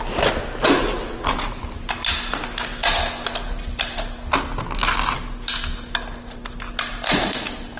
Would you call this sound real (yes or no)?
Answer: yes